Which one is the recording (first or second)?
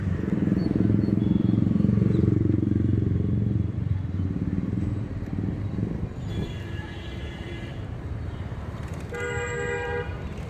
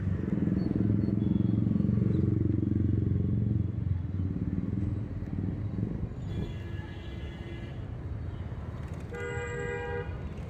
second